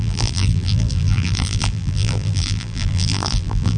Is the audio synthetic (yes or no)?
yes